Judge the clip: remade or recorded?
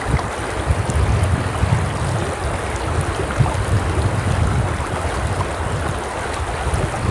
recorded